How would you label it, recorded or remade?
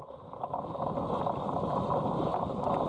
recorded